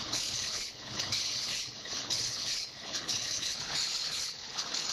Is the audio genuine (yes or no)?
no